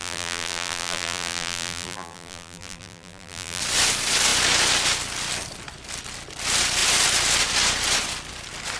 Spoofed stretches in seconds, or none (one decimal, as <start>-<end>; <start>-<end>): 0.0-3.6